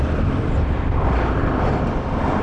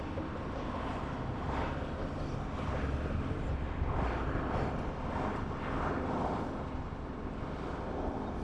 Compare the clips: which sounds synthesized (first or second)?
first